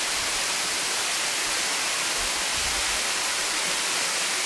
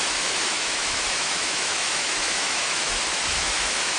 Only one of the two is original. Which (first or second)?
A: first